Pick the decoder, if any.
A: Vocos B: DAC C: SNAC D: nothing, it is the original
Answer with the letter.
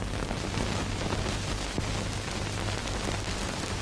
D